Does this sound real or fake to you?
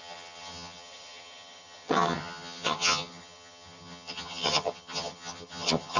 fake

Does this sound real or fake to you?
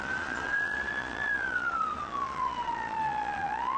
fake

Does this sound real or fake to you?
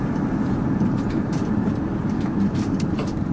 fake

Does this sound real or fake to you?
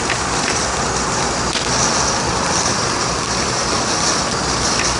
real